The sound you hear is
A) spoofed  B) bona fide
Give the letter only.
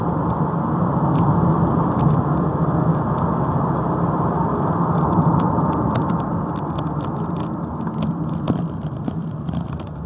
B